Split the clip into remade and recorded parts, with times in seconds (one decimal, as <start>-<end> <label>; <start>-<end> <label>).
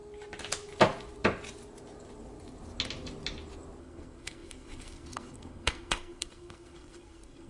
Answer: 0.0-3.8 recorded; 3.8-7.5 remade